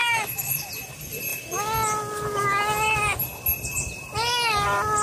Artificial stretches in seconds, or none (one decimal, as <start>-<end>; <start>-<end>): 0.0-0.7